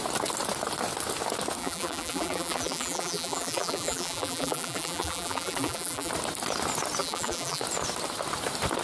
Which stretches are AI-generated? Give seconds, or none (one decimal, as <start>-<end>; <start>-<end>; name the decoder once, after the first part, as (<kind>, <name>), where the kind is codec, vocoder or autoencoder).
1.6-6.1 (vocoder, BigVGAN v2); 7.0-7.6